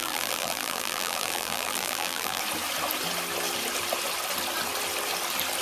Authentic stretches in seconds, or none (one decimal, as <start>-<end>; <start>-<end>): 2.4-5.6